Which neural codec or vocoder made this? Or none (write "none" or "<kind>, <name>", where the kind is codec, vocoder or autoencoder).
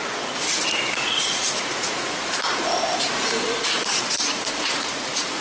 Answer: vocoder, Vocos